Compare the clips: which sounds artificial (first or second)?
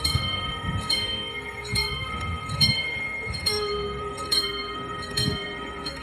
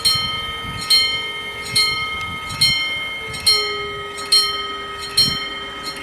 first